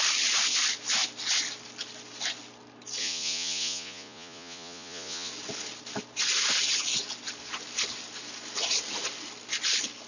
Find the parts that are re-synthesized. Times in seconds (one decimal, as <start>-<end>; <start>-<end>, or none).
3.0-5.3